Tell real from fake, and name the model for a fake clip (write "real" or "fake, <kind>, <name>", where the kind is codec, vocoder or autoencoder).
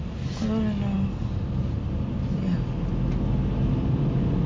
real